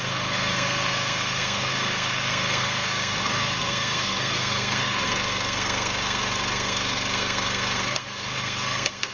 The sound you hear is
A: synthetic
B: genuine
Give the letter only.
A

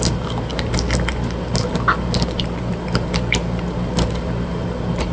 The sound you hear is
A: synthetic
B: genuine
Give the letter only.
B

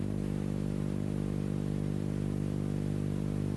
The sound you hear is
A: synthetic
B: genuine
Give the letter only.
B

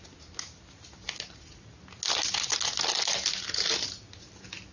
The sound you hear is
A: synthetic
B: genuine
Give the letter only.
B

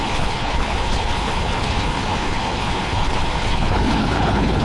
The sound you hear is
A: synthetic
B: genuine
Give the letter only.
A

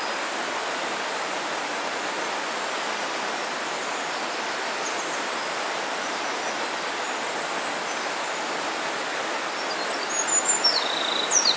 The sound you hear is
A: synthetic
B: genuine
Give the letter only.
B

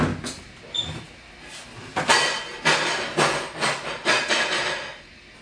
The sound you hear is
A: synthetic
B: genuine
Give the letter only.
B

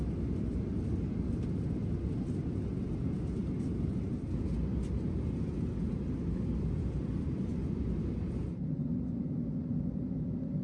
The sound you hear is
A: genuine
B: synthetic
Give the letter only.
A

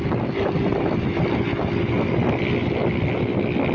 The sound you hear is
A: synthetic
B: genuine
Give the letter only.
B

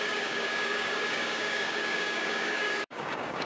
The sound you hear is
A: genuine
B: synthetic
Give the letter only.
B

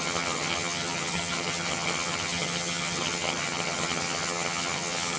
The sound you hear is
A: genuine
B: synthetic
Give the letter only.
B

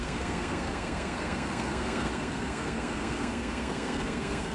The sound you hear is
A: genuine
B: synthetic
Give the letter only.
B